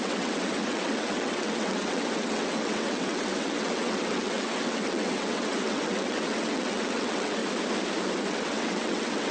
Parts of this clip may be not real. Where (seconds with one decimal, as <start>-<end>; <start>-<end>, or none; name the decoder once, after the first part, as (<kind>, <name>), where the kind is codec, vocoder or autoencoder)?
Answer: 0.0-7.4 (vocoder, WaveNeXt); 8.3-9.3